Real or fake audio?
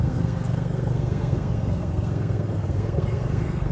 fake